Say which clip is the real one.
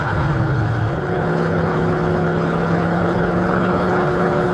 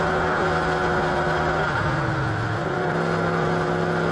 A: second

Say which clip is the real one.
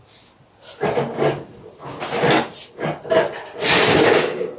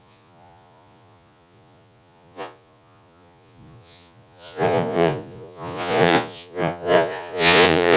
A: first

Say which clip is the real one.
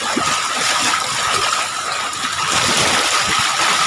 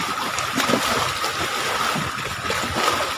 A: second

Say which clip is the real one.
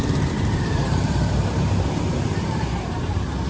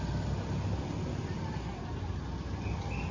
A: second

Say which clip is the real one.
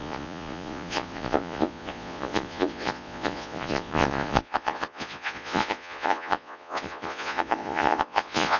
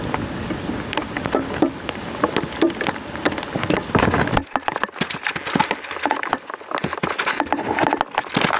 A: second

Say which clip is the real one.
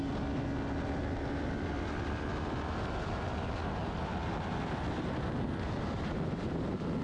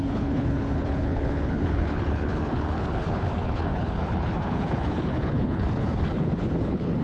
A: first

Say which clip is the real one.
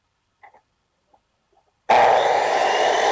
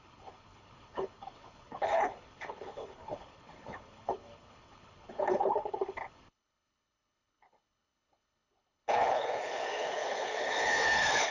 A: first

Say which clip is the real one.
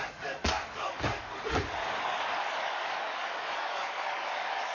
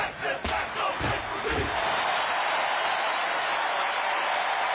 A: second